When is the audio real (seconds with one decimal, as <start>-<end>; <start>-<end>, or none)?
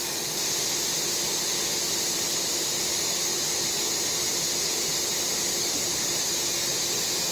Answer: 0.0-7.3